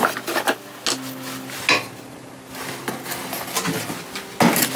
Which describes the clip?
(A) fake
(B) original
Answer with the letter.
B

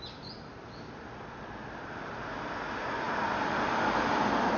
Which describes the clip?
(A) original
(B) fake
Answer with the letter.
A